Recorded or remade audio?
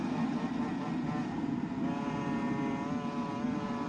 recorded